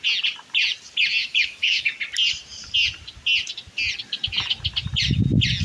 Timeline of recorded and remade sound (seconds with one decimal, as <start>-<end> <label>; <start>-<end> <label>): 0.0-1.2 recorded; 1.2-1.9 remade; 1.9-5.6 recorded